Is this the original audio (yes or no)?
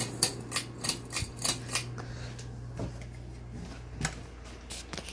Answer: yes